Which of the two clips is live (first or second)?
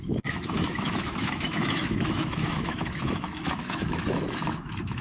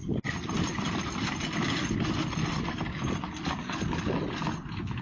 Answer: second